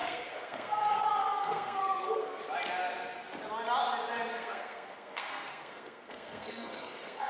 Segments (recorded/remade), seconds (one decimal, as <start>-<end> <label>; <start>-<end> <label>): 0.0-2.4 remade; 2.4-4.3 recorded; 4.3-7.3 remade